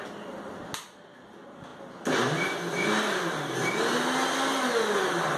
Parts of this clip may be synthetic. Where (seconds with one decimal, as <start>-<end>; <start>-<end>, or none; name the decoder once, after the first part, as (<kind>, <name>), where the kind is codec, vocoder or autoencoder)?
none